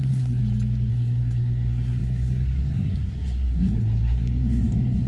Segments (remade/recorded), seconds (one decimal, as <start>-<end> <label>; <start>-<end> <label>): 0.0-0.4 remade; 0.4-0.9 recorded; 0.9-5.1 remade